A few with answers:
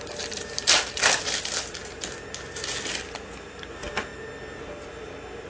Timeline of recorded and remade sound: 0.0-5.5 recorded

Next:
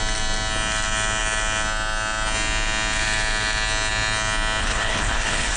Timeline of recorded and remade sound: 0.0-4.6 recorded; 4.6-5.6 remade

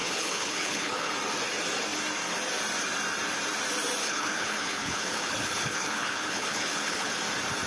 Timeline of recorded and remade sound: 0.0-1.1 remade; 1.1-4.0 recorded; 4.0-7.1 remade; 7.1-7.7 recorded

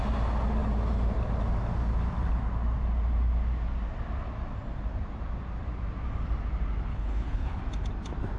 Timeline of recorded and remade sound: 0.0-6.9 recorded; 6.9-7.6 remade; 7.6-8.4 recorded

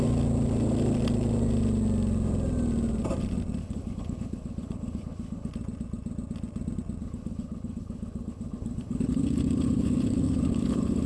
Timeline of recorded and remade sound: 0.0-3.6 recorded; 3.6-5.5 remade; 5.5-7.0 recorded; 7.0-11.1 remade